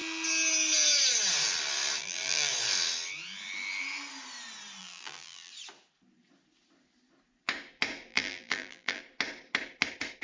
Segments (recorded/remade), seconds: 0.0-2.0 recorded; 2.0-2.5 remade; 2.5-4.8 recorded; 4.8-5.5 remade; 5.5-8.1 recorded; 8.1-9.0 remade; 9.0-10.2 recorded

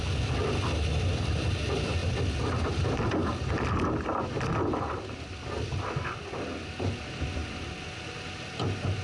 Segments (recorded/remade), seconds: 0.0-9.0 recorded

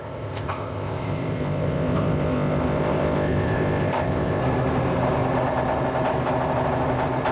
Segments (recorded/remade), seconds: 0.0-4.4 remade; 4.4-7.3 recorded

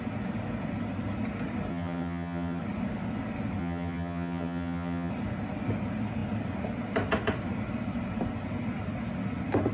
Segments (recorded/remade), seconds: 0.0-1.7 recorded; 1.7-2.6 remade; 2.6-3.6 recorded; 3.6-5.1 remade; 5.1-9.7 recorded

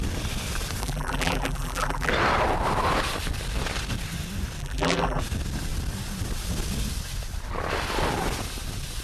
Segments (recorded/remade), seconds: 0.0-0.8 recorded; 0.8-2.1 remade; 2.1-4.6 recorded; 4.6-5.2 remade; 5.2-9.0 recorded

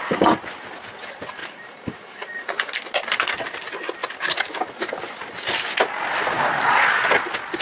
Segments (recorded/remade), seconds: 0.0-1.4 recorded; 1.4-2.7 remade; 2.7-7.6 recorded

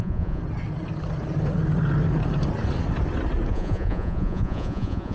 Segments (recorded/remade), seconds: 0.0-0.4 remade; 0.4-3.5 recorded; 3.5-5.1 remade